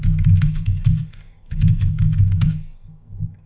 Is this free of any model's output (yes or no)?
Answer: no